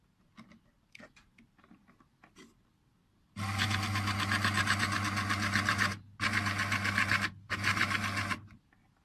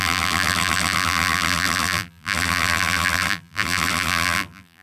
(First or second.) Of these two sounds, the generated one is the second